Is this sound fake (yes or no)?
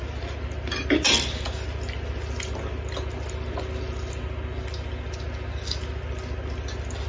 no